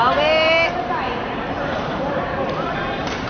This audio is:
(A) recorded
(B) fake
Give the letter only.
B